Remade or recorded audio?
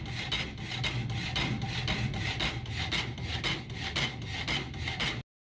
recorded